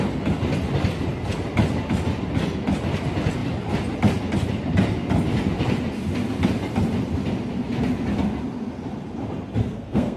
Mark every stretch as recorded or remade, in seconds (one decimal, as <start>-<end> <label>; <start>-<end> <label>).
0.0-9.6 recorded; 9.6-10.2 remade